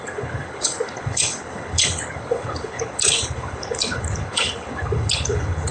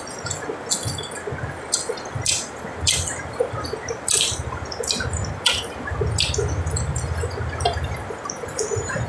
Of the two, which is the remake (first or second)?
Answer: first